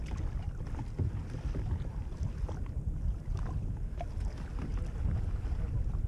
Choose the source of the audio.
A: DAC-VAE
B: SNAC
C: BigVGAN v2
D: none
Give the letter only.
D